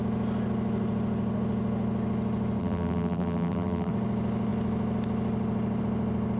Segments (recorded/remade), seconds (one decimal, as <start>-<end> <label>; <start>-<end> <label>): 0.0-2.6 recorded; 2.6-3.9 remade; 3.9-6.4 recorded